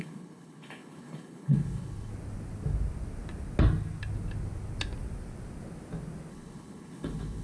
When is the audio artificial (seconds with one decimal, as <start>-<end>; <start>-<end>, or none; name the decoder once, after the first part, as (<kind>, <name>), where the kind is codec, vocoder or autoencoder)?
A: 0.0-2.1 (codec, HILCodec); 6.3-7.4